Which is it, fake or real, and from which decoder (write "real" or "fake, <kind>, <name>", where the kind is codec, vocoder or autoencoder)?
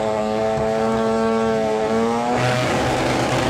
fake, codec, DAC